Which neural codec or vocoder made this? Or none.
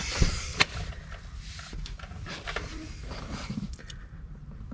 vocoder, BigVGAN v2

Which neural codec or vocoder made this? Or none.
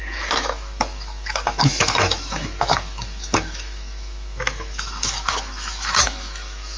autoencoder, DAC-VAE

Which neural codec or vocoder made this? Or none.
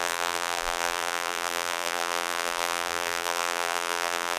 vocoder, BigVGAN v2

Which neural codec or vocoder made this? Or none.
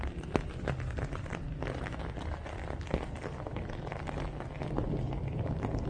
none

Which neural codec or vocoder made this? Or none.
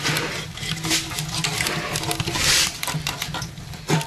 none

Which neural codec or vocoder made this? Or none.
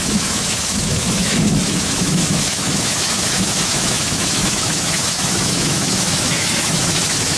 autoencoder, DAC-VAE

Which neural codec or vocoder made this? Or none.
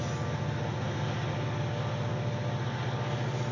none